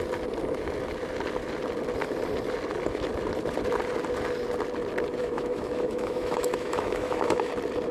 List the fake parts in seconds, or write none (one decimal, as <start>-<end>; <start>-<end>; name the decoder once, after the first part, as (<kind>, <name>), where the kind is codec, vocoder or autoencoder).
5.2-7.5 (autoencoder, DAC-VAE)